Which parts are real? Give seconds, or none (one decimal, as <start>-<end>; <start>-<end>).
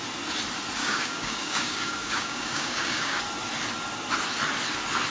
0.0-0.8; 3.2-5.1